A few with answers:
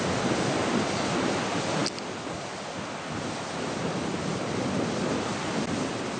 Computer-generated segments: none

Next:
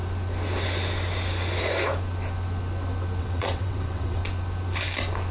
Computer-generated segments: 3.2-4.2 (vocoder, WaveNeXt)

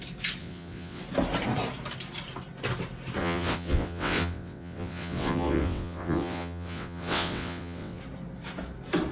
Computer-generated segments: 0.4-1.0 (vocoder, WaveNeXt); 3.2-8.0

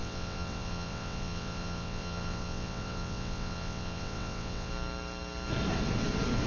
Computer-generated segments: 0.0-4.7 (vocoder, WaveNeXt)

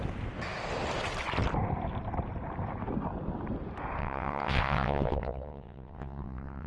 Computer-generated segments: 4.0-6.7 (vocoder, WaveNeXt)

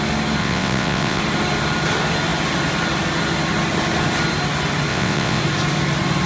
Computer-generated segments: 0.4-1.2 (vocoder, WaveNeXt); 4.9-5.4